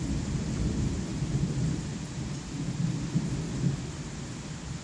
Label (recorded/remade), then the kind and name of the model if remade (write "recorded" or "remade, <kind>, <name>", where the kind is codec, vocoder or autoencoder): recorded